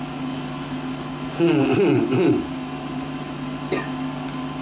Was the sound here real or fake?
real